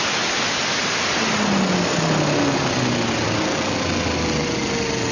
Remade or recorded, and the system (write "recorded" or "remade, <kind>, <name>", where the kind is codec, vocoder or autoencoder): recorded